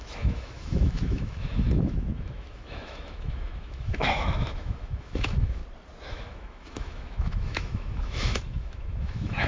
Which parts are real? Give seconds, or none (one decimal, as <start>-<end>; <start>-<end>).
5.6-6.1